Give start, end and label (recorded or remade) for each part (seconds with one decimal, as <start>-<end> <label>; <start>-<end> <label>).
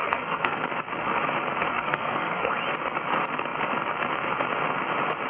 0.0-0.6 remade; 0.6-1.7 recorded; 1.7-2.5 remade; 2.5-5.3 recorded